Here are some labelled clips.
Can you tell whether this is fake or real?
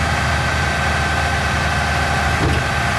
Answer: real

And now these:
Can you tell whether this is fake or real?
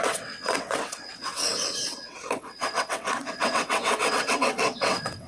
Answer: fake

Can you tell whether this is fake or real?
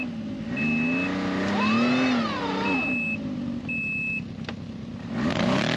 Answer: real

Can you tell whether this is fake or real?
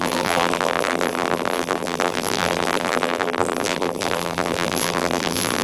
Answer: fake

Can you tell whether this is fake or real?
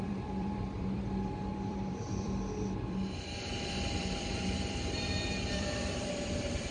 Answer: fake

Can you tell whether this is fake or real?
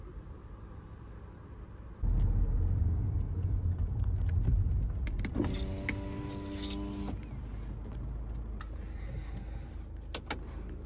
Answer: real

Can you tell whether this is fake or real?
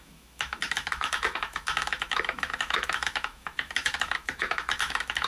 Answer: fake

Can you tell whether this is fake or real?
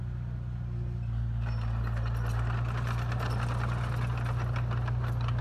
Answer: real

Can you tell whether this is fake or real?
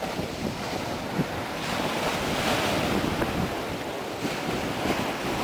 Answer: real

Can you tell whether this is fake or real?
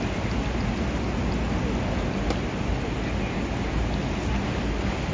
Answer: real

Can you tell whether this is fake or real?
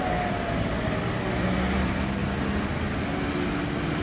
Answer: real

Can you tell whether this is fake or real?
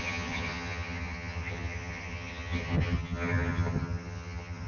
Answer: fake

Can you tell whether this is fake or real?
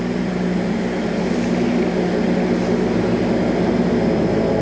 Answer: real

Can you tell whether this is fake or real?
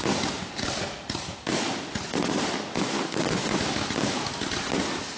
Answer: real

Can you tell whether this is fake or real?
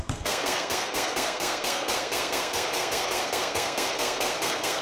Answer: fake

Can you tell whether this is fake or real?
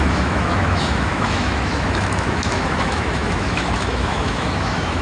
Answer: fake